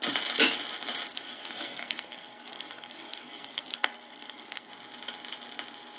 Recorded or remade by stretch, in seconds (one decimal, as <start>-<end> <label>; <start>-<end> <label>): 0.0-1.1 recorded; 1.1-4.7 remade; 4.7-6.0 recorded